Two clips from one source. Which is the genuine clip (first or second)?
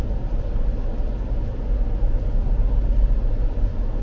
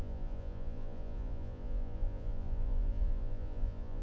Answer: first